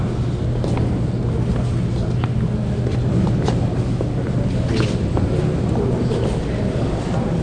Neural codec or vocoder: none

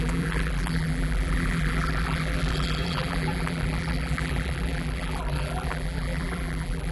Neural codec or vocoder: vocoder, BigVGAN v2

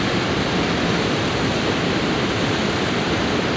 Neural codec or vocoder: vocoder, BigVGAN v2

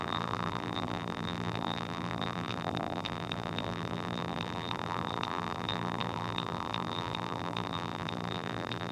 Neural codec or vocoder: vocoder, BigVGAN v2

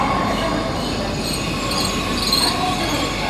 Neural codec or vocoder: none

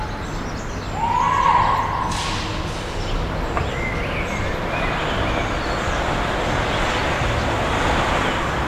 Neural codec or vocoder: none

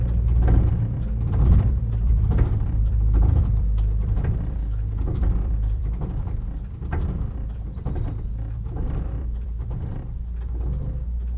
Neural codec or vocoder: vocoder, BigVGAN v2